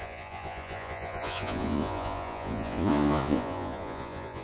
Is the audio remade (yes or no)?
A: yes